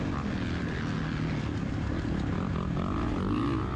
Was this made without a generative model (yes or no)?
yes